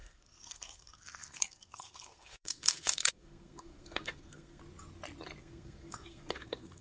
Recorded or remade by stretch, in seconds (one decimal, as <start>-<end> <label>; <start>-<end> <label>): 0.0-4.6 remade; 4.6-5.4 recorded; 5.4-6.8 remade